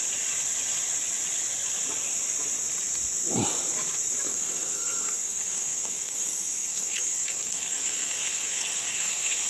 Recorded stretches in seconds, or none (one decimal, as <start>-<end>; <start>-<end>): 0.0-4.3